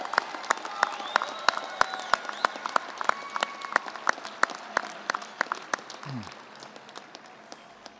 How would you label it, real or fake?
real